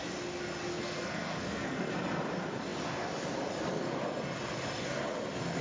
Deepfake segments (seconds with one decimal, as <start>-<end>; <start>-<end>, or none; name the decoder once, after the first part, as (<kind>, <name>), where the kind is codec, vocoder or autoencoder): 0.7-1.9 (codec, SNAC)